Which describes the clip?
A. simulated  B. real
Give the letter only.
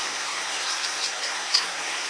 A